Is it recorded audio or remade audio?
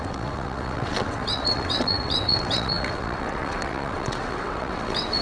remade